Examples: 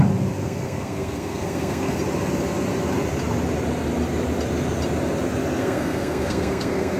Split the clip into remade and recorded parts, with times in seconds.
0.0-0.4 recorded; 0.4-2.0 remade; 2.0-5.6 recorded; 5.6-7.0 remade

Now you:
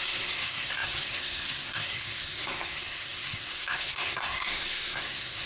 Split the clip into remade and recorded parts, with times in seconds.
0.0-5.5 remade